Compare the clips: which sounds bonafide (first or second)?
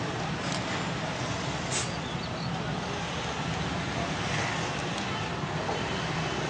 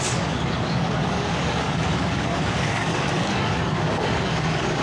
first